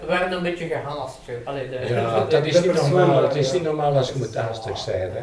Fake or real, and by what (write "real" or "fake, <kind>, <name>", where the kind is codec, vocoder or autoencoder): fake, vocoder, BigVGAN v2